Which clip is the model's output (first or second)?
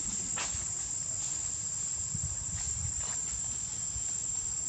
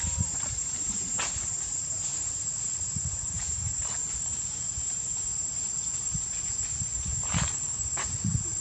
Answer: second